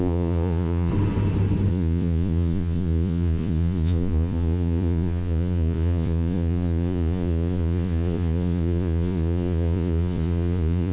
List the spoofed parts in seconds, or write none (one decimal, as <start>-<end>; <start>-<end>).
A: 0.0-0.9; 1.7-10.9